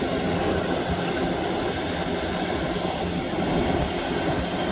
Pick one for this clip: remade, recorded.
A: recorded